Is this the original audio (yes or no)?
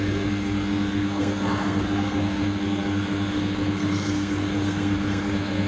no